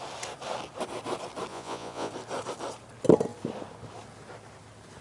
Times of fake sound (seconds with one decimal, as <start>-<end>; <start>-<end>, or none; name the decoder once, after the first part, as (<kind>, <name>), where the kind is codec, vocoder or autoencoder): 1.5-2.1 (vocoder, Vocos)